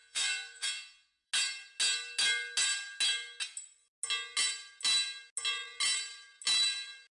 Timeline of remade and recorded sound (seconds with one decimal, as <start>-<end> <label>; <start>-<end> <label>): 0.0-1.3 remade; 1.3-7.1 recorded